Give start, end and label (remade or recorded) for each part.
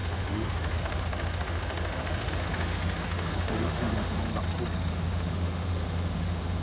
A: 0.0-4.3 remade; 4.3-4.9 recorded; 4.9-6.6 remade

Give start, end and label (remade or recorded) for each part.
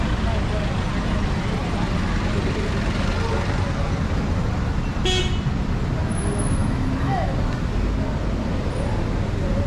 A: 0.0-6.6 recorded; 6.6-7.3 remade; 7.3-9.7 recorded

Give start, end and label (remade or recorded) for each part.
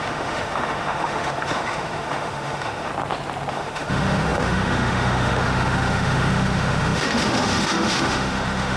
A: 0.0-2.9 remade; 2.9-3.5 recorded; 3.5-8.8 remade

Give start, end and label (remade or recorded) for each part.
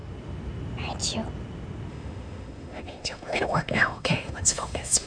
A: 0.0-1.9 recorded; 1.9-5.1 remade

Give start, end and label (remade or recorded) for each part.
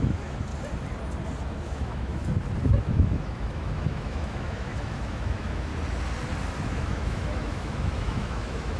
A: 0.0-0.5 remade; 0.5-1.4 recorded; 1.4-2.2 remade; 2.2-2.8 recorded; 2.8-5.7 remade; 5.7-6.6 recorded; 6.6-8.8 remade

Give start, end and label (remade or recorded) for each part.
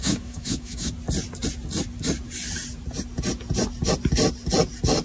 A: 0.0-0.9 remade; 0.9-5.0 recorded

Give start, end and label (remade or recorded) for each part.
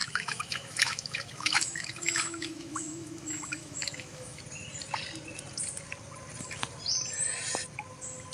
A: 0.0-4.4 remade; 4.4-8.3 recorded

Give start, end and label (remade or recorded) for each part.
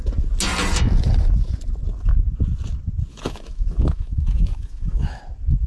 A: 0.0-3.1 recorded; 3.1-5.2 remade; 5.2-5.7 recorded